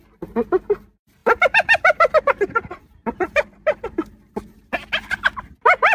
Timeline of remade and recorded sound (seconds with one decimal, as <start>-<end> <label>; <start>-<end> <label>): 0.0-1.2 recorded; 1.2-4.7 remade; 4.7-5.9 recorded